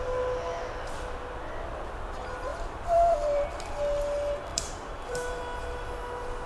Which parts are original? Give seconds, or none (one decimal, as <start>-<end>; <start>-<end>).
0.0-2.5; 3.7-4.5; 5.4-6.5